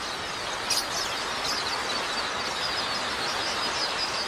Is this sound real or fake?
real